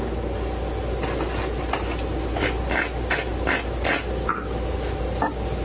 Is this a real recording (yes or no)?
yes